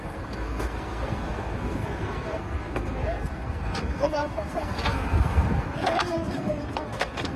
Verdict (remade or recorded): remade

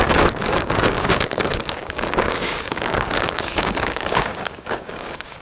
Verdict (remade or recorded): remade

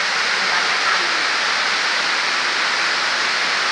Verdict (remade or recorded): recorded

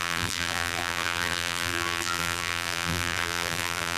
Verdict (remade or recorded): remade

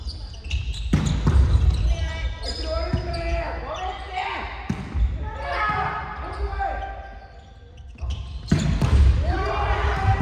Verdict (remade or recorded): recorded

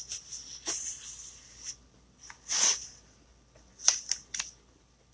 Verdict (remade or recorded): recorded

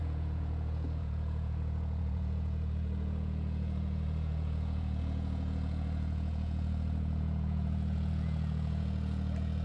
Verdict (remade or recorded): remade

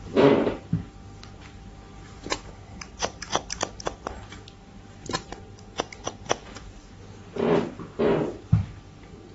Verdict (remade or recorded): recorded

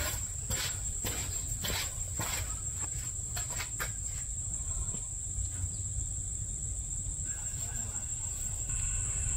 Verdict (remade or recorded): remade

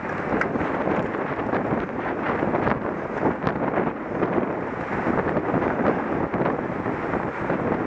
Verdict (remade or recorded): recorded